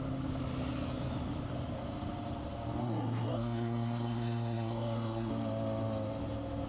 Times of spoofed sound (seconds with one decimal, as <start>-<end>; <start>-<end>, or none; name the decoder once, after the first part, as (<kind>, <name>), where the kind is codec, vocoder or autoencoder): 2.8-5.3 (codec, SNAC)